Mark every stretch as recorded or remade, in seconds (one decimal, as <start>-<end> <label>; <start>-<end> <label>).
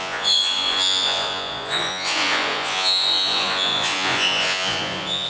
0.0-5.3 remade